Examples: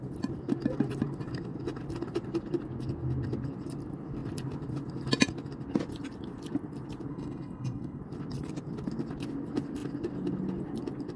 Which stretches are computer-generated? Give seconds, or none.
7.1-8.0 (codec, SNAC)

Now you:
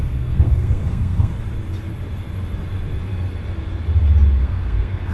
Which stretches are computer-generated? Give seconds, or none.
0.0-1.3 (codec, SNAC); 4.4-5.1

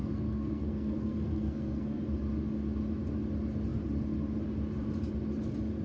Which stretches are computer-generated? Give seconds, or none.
0.0-2.0 (codec, SNAC)

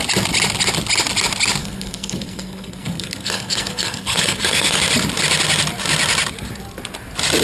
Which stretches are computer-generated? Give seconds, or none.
1.6-4.8 (codec, SNAC)

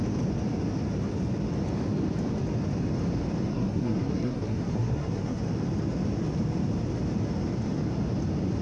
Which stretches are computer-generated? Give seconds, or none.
3.5-5.4 (codec, SNAC)

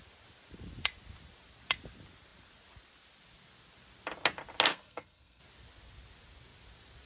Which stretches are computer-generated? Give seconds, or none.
4.7-5.4 (codec, SNAC)

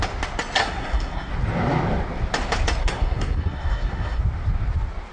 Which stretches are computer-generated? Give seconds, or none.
0.6-1.3 (codec, SNAC); 2.8-4.2

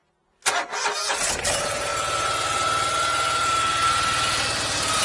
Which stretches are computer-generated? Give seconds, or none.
none